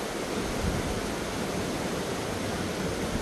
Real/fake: real